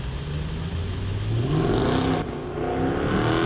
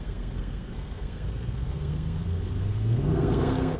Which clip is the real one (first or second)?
first